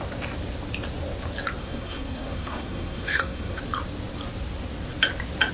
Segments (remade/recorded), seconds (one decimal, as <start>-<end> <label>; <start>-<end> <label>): 0.0-1.6 recorded; 1.6-3.6 remade; 3.6-5.5 recorded